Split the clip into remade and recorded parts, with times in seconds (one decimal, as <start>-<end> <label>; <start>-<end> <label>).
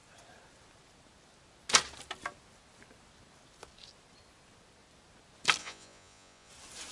0.0-5.6 recorded; 5.6-6.5 remade; 6.5-6.9 recorded